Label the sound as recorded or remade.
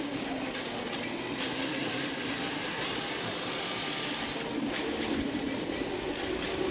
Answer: recorded